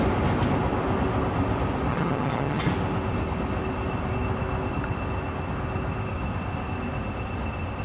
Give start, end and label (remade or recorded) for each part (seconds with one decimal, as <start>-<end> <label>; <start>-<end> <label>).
0.0-1.9 recorded; 1.9-2.6 remade; 2.6-7.8 recorded